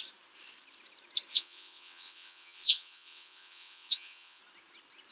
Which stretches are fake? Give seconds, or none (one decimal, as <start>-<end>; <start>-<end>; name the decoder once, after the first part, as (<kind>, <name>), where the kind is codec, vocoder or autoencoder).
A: 1.3-4.4 (vocoder, WaveNeXt)